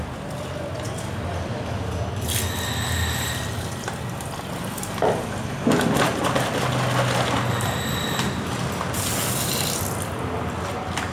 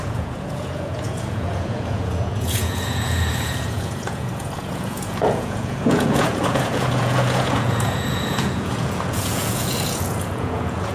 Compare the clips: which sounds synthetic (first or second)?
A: second